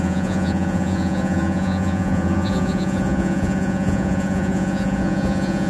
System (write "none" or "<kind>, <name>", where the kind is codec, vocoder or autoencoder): vocoder, Vocos